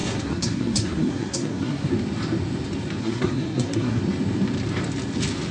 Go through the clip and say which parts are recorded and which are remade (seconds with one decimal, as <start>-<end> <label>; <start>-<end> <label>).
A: 0.0-1.9 remade; 1.9-3.0 recorded; 3.0-4.0 remade; 4.0-5.5 recorded